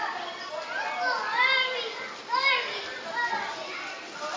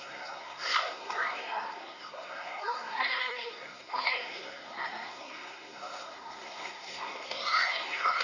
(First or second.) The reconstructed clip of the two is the second